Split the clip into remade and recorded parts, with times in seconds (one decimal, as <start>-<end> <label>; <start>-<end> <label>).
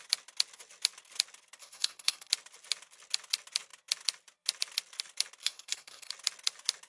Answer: 0.0-1.6 recorded; 1.6-2.3 remade; 2.3-5.4 recorded; 5.4-6.1 remade; 6.1-6.9 recorded